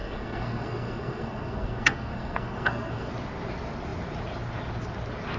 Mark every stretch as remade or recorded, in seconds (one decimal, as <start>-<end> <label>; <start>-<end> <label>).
0.0-3.1 remade; 3.1-5.4 recorded